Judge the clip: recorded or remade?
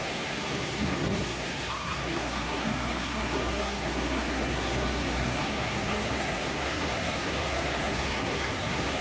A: remade